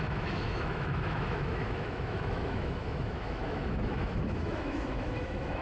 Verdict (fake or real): fake